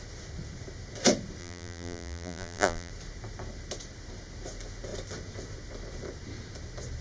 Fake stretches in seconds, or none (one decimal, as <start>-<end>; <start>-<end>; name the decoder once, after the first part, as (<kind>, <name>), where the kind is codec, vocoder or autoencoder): 1.4-2.9 (vocoder, BigVGAN v2)

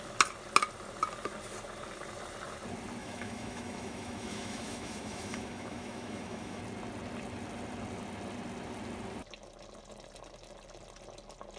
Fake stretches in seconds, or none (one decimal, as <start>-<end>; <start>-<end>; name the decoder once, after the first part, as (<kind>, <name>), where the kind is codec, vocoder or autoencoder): 3.0-6.6 (autoencoder, DAC-VAE)

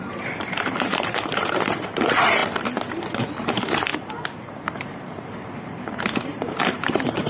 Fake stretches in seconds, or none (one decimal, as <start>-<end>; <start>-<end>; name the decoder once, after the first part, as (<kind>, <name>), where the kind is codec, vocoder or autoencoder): 0.0-2.4 (vocoder, BigVGAN v2); 3.3-3.9; 4.7-7.3

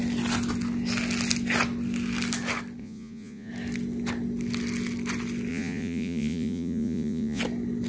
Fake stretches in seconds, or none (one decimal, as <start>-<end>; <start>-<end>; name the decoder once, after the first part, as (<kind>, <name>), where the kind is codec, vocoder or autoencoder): 2.8-3.5 (vocoder, Vocos); 5.5-7.4

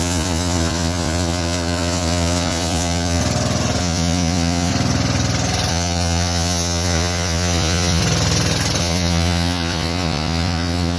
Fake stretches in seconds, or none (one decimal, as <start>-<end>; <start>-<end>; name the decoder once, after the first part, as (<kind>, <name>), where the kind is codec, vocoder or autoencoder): 0.0-3.2 (vocoder, Vocos); 3.8-4.7; 5.7-8.0; 8.8-11.0